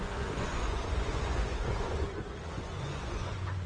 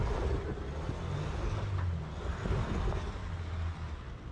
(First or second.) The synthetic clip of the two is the first